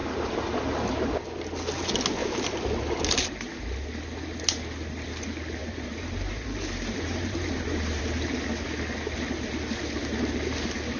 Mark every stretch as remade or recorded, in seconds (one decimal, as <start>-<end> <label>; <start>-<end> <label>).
0.0-2.2 recorded; 2.2-3.5 remade; 3.5-5.6 recorded; 5.6-8.0 remade; 8.0-11.0 recorded